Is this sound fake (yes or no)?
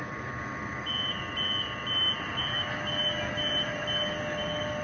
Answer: no